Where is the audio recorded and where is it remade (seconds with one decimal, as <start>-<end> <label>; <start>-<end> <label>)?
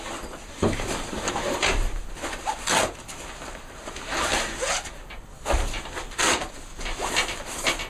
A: 0.0-0.5 recorded; 0.5-1.3 remade; 1.3-7.9 recorded